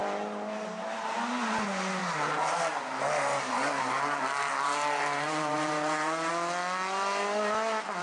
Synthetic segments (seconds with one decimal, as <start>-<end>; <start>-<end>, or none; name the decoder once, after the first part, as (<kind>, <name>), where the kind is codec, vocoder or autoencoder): 2.0-6.3 (vocoder, BigVGAN v2)